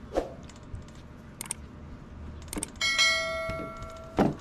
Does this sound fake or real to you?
real